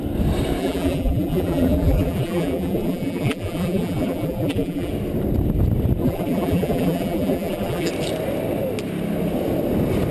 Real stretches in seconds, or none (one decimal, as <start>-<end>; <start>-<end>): 0.0-0.6; 4.9-6.0; 7.9-10.1